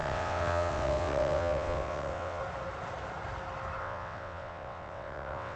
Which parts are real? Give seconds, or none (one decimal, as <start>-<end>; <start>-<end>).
2.4-3.8